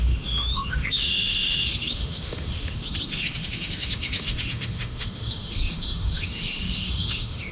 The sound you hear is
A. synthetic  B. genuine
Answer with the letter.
A